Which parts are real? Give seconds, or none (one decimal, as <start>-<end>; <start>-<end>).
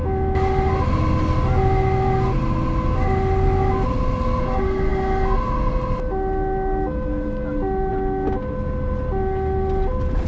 0.0-10.3